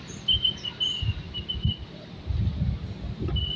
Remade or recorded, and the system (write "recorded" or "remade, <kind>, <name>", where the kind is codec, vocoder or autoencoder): recorded